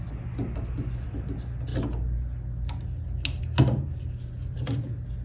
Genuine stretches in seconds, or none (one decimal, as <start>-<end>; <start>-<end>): 0.0-5.2